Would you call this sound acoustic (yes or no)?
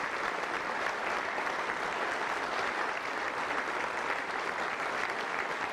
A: yes